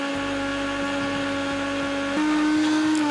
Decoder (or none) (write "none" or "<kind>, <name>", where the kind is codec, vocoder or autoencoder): none